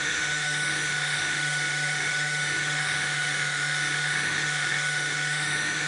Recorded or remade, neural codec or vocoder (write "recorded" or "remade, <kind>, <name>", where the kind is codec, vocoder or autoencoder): remade, autoencoder, DAC-VAE